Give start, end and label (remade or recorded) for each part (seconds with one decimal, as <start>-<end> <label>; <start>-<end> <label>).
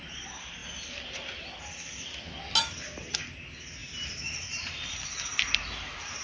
0.0-3.8 recorded; 3.8-6.2 remade